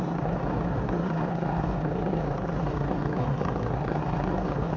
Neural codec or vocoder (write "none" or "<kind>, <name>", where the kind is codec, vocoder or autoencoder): codec, SNAC